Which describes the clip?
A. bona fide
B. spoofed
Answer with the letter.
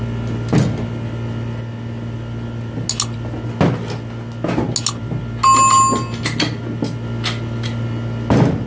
A